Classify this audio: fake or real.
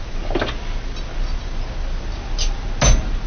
real